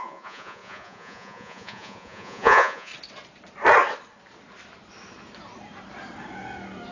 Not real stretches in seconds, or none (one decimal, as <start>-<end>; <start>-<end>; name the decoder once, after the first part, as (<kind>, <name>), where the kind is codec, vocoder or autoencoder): 0.0-2.9 (vocoder, Vocos)